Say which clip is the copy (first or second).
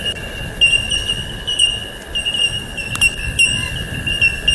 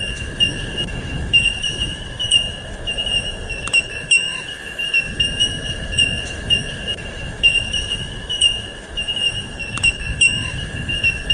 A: second